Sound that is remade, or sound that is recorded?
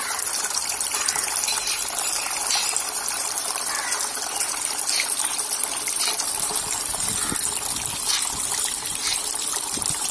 remade